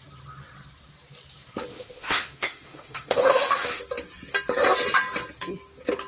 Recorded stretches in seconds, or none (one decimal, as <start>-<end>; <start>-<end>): 0.0-1.7; 3.8-6.1